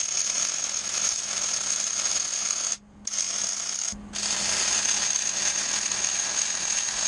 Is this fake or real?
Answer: real